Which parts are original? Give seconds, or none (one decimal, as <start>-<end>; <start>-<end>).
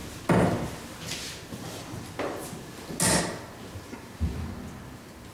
0.0-5.3